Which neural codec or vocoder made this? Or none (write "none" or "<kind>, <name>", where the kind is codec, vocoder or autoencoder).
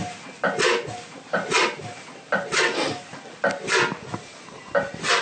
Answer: none